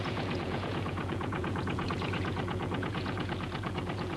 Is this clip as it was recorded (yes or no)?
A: no